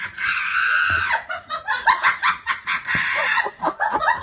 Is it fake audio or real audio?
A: fake